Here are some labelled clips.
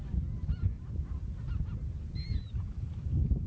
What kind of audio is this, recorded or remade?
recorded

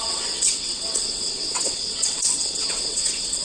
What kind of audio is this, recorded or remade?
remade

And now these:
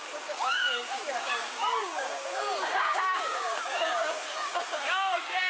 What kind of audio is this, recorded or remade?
remade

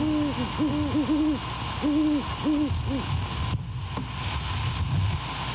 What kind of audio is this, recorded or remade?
recorded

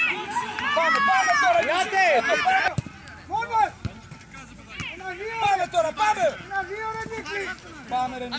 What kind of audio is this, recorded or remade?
recorded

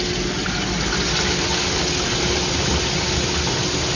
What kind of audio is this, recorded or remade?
recorded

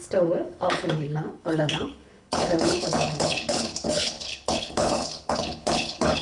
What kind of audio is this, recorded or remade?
remade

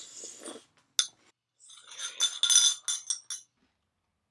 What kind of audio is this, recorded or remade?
recorded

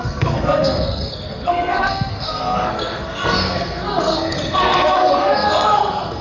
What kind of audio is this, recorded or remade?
remade